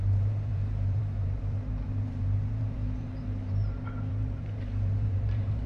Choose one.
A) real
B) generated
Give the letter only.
B